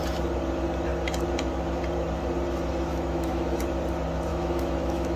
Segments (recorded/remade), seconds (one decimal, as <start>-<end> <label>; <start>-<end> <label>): 0.0-2.9 recorded; 2.9-3.6 remade; 3.6-4.3 recorded; 4.3-5.2 remade